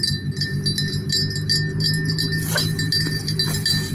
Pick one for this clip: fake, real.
real